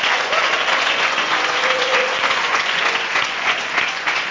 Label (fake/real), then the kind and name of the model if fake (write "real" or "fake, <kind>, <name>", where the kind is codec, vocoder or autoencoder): fake, vocoder, Vocos